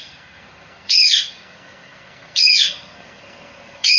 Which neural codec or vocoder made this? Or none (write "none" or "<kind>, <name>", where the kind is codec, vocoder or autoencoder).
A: codec, SNAC